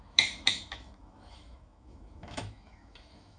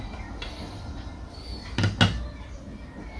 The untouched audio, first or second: second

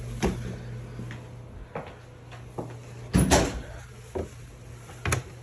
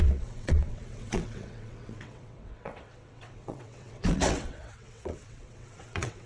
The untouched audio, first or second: first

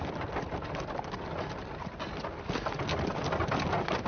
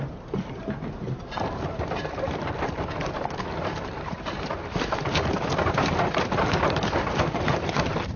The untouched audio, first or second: first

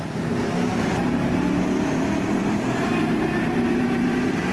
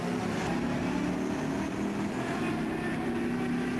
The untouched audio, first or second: second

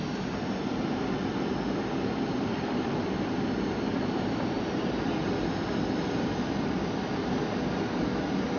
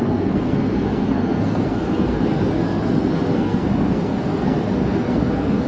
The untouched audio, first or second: first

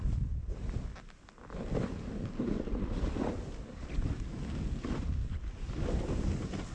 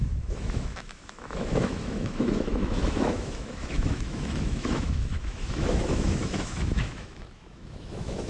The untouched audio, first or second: first